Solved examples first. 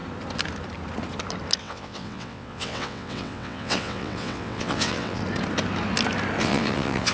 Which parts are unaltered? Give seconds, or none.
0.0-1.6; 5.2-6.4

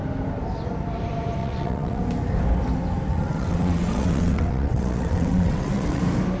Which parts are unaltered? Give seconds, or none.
0.0-1.4; 2.0-3.1; 6.0-6.4

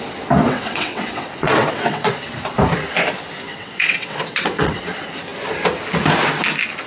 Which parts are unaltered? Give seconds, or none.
0.0-0.4; 2.1-3.5; 4.8-6.9

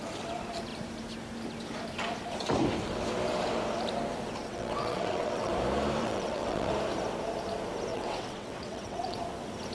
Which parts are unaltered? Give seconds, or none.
0.0-4.4; 5.5-6.0; 6.7-7.9; 9.2-9.7